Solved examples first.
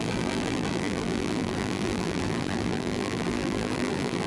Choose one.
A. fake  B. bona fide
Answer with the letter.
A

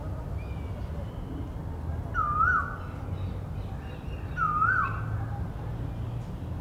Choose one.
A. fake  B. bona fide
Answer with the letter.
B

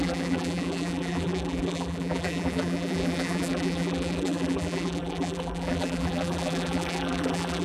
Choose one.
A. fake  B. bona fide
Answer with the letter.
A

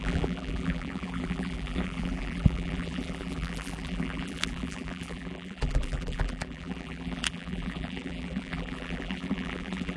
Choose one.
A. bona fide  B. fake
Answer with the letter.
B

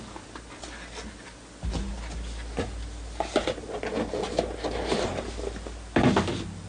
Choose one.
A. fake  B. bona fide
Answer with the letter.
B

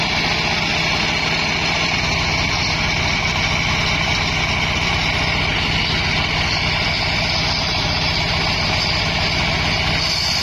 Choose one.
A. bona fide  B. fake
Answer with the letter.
A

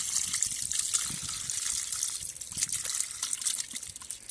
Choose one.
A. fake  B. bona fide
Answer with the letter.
B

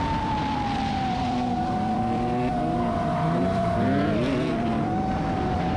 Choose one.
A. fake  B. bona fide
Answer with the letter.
A